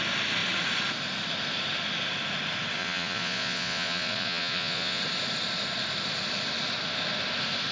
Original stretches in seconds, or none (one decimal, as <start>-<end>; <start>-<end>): 0.0-2.8; 5.0-7.7